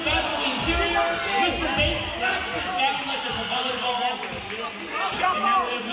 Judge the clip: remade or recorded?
recorded